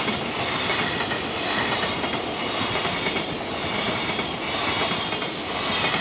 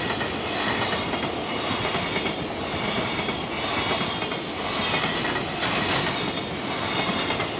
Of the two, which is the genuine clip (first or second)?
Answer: second